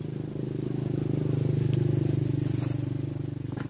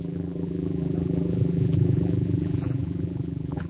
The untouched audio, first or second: first